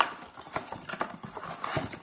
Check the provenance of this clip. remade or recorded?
recorded